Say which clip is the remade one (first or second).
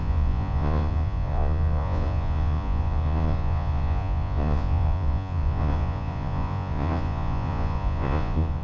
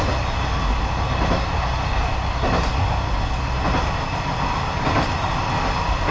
first